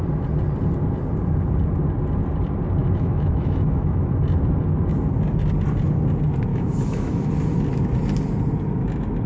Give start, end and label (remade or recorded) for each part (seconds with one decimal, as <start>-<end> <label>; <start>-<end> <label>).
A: 0.0-2.8 recorded; 2.8-4.1 remade; 4.1-6.5 recorded; 6.5-7.3 remade; 7.3-9.3 recorded